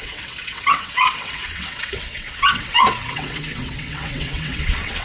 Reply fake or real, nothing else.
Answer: fake